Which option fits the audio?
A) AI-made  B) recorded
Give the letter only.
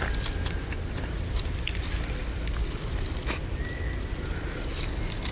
B